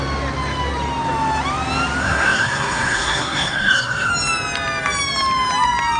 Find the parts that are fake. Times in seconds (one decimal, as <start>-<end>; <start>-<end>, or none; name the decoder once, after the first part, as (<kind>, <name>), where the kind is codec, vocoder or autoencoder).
2.0-4.1 (codec, SNAC)